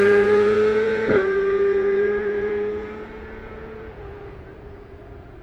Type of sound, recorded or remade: remade